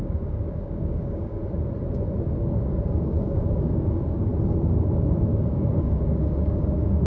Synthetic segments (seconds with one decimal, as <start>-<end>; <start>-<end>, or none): 0.0-1.4; 2.3-4.3; 4.9-7.1